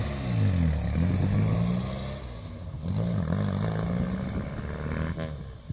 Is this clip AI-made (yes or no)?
no